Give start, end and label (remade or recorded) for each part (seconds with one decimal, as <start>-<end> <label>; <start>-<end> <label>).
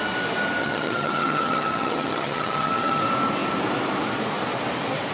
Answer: 0.0-0.6 recorded; 0.6-3.0 remade; 3.0-5.1 recorded